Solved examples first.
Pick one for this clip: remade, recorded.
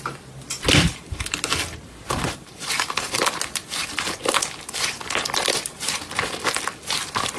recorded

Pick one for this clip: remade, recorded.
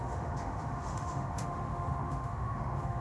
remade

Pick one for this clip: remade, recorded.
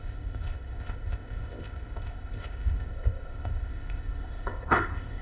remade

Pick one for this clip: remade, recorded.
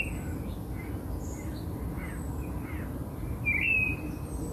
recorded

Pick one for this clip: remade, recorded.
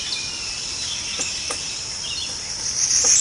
recorded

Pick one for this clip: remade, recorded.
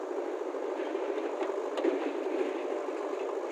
recorded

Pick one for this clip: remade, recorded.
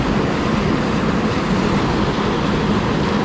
recorded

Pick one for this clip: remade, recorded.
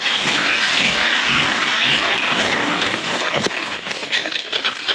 remade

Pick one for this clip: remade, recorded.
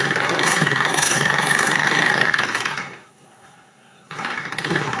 remade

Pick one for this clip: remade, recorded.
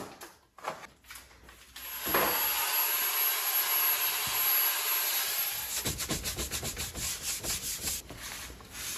recorded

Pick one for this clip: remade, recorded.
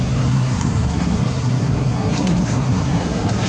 remade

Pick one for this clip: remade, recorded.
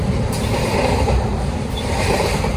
remade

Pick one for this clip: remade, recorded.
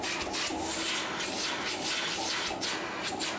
recorded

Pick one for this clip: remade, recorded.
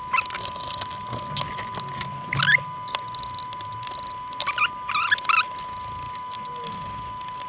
recorded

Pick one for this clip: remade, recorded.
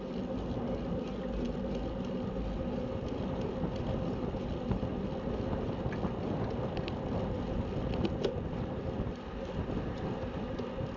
recorded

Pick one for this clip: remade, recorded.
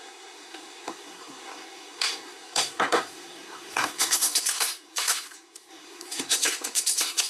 remade